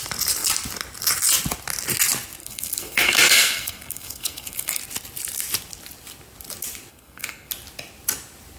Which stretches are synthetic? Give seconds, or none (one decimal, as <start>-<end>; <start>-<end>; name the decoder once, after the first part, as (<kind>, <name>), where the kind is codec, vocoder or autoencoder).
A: 2.4-4.8 (codec, SNAC); 6.9-7.5